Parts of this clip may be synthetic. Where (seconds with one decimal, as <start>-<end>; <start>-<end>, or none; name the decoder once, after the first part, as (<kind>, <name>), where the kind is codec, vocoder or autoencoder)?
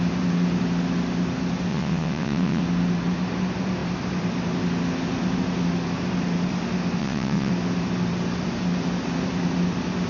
1.7-2.6 (vocoder, WaveNeXt); 7.0-7.5